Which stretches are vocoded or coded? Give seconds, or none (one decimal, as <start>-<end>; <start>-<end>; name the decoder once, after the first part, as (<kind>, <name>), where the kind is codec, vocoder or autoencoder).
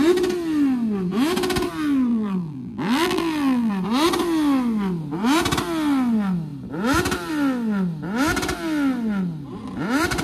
2.1-3.7 (vocoder, BigVGAN v2)